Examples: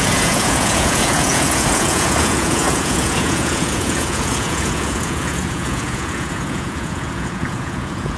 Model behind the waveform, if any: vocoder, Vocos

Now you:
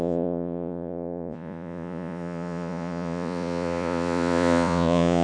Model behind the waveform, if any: vocoder, Vocos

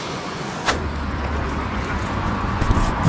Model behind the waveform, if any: vocoder, Vocos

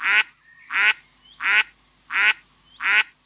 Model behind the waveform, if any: none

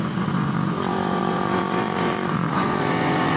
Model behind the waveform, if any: vocoder, Vocos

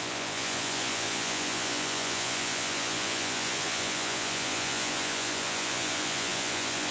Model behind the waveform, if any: vocoder, Vocos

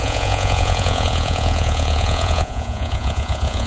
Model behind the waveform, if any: vocoder, Vocos